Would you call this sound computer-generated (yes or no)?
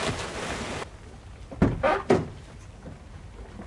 no